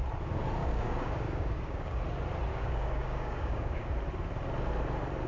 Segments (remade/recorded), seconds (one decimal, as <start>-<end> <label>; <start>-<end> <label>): 0.0-0.6 recorded; 0.6-2.0 remade; 2.0-2.5 recorded; 2.5-3.9 remade; 3.9-5.3 recorded